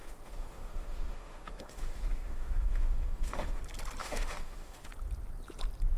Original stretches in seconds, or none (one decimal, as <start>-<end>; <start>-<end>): 3.6-4.0; 4.9-6.0